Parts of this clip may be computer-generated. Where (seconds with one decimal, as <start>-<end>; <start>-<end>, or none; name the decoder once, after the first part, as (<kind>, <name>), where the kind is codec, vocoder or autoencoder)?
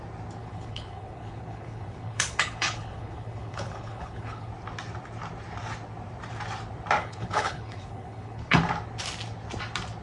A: 0.4-4.5 (codec, HILCodec); 7.0-8.6